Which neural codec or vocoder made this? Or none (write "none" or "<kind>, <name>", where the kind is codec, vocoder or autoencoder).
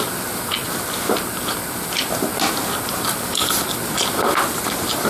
none